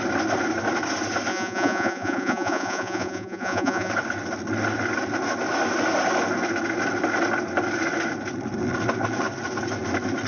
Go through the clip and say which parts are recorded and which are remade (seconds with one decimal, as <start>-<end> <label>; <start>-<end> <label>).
0.0-1.3 recorded; 1.3-3.9 remade; 3.9-10.3 recorded

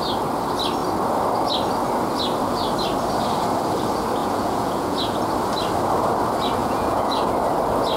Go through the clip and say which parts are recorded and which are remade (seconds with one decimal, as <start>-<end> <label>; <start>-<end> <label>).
0.0-4.2 recorded; 4.2-5.2 remade; 5.2-6.6 recorded; 6.6-7.3 remade; 7.3-8.0 recorded

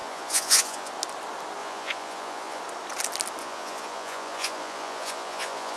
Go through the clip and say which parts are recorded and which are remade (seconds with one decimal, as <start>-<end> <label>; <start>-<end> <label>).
0.0-0.9 remade; 0.9-1.6 recorded; 1.6-2.6 remade; 2.6-3.4 recorded; 3.4-5.8 remade

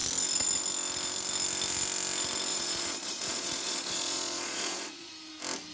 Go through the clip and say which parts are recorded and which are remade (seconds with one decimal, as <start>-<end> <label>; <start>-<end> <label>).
0.0-2.5 recorded; 2.5-5.1 remade; 5.1-5.7 recorded

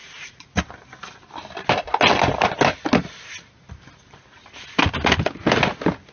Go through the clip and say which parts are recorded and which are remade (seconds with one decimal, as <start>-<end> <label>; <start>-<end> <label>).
0.0-0.6 remade; 0.6-6.1 recorded

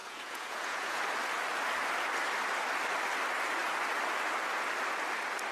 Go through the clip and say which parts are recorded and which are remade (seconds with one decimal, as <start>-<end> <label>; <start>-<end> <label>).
0.0-1.0 remade; 1.0-5.5 recorded

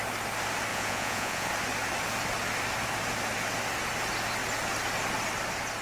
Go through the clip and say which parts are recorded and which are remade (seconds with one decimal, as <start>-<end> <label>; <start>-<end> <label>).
0.0-0.7 recorded; 0.7-1.5 remade; 1.5-5.8 recorded

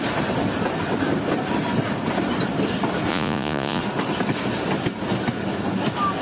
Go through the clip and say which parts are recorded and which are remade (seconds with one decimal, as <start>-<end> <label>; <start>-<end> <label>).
0.0-3.1 recorded; 3.1-3.8 remade; 3.8-6.2 recorded